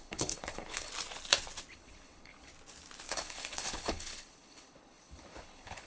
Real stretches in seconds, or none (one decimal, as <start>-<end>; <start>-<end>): 0.9-1.7; 2.5-3.1